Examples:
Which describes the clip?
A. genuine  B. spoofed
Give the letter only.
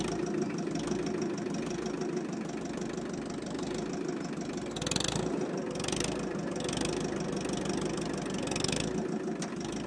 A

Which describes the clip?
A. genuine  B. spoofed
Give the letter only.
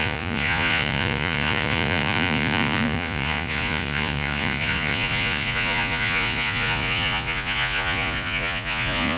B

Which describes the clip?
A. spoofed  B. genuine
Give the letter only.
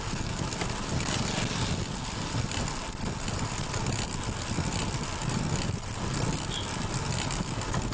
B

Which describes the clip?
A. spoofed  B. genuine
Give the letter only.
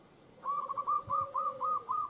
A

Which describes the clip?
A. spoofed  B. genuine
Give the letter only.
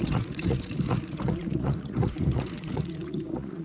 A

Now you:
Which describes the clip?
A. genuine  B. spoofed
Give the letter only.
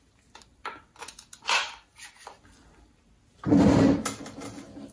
A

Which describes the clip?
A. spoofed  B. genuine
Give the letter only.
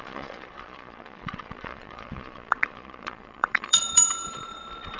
A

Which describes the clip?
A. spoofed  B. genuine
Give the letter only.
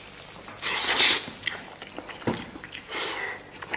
B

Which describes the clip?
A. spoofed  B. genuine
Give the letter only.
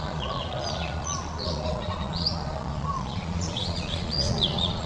A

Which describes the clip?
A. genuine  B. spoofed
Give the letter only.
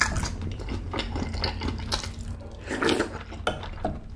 A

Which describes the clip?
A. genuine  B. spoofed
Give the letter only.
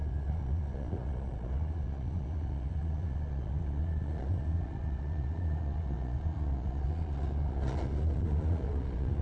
B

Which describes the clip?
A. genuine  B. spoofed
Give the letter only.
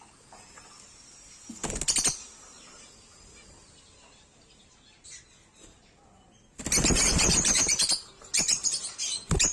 A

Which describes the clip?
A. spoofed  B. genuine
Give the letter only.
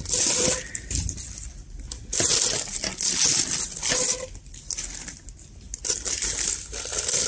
B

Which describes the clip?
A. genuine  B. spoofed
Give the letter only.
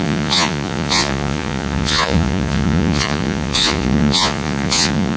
B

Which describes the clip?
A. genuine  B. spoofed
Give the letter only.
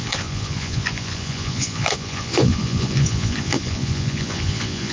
B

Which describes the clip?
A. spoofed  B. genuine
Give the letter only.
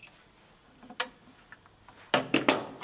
B